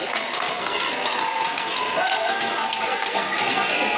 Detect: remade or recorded remade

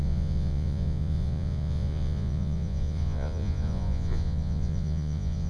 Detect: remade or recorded remade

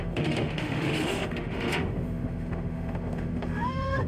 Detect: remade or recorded remade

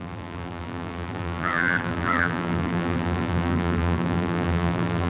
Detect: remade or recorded remade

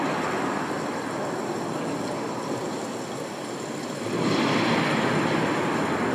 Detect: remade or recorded recorded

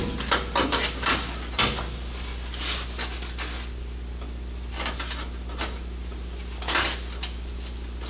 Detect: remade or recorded recorded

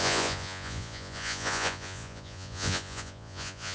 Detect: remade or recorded remade